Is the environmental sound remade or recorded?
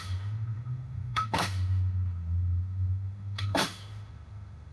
remade